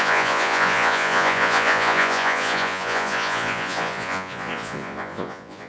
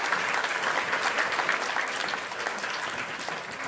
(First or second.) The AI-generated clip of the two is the first